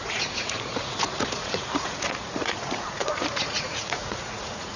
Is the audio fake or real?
fake